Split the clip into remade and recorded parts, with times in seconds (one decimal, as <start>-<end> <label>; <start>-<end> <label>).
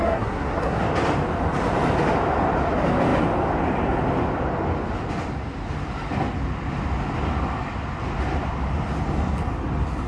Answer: 0.0-0.8 remade; 0.8-10.1 recorded